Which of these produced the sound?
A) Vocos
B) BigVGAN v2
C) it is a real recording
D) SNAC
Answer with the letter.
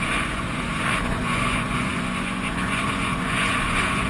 A